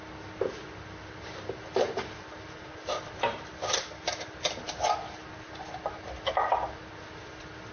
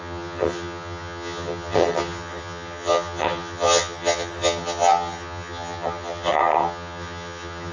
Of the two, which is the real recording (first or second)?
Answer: first